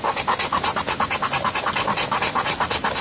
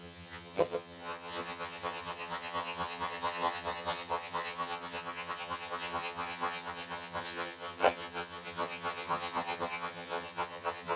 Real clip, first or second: first